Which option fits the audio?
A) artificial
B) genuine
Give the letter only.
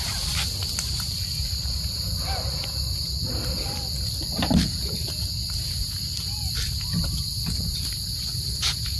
B